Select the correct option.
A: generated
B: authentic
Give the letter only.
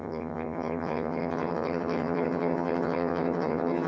A